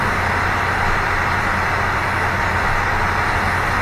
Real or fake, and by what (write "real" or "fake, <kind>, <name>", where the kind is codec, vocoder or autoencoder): real